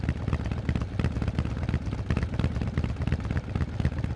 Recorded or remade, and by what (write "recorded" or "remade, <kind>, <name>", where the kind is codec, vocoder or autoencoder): recorded